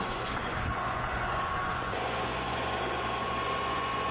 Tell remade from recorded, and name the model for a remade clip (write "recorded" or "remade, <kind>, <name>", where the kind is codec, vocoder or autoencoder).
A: remade, vocoder, Vocos